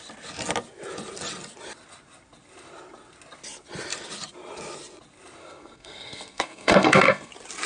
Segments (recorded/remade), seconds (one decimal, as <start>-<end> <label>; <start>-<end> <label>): 0.0-5.4 recorded; 5.4-7.3 remade; 7.3-7.7 recorded